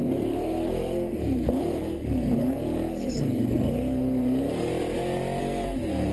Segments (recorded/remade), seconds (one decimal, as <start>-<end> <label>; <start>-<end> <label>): 0.0-4.7 remade; 4.7-5.4 recorded; 5.4-6.1 remade